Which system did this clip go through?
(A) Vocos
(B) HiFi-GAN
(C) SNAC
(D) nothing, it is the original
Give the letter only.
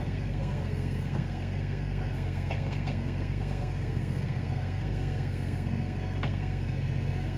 C